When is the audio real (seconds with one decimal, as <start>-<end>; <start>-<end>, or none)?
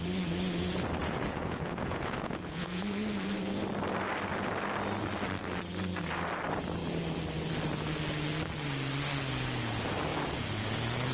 0.0-1.0; 2.8-11.1